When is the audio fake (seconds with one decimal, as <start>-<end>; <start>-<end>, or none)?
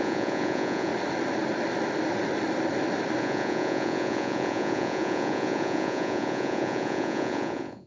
0.0-0.9; 3.2-7.9